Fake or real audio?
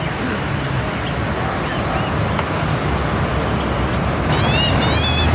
real